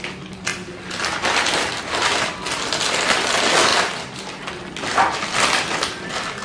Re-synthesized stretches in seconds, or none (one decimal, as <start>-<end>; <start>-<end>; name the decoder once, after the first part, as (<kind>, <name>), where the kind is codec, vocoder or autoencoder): none